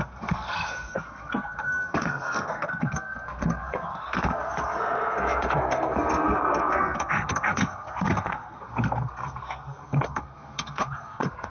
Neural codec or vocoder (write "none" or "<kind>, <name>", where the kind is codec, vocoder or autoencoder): codec, SNAC